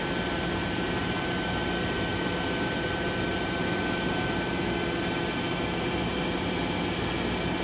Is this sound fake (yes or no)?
no